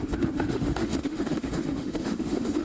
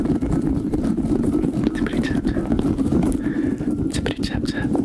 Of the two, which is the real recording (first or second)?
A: second